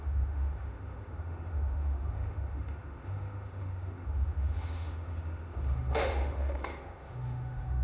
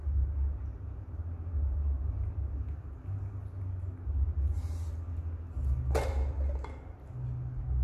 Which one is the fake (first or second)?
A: first